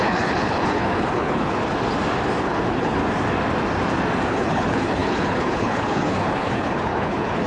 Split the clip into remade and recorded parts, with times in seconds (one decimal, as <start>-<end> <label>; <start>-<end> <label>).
0.0-1.6 remade; 1.6-2.4 recorded; 2.4-3.0 remade; 3.0-4.3 recorded; 4.3-7.5 remade